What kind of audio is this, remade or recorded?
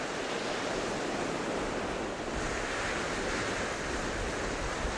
recorded